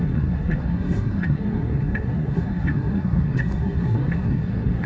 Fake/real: fake